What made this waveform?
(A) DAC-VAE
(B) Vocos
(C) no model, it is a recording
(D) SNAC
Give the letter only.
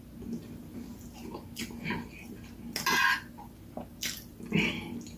C